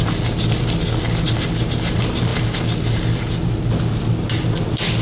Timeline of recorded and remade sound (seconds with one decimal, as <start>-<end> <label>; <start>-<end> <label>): 0.0-5.0 recorded